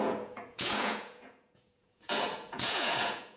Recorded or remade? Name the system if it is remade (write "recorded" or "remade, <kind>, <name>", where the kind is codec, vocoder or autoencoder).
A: remade, vocoder, Vocos